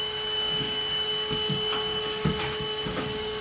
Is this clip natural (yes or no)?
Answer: no